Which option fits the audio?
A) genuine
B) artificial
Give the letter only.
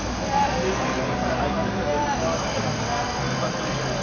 A